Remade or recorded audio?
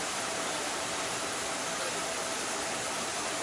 recorded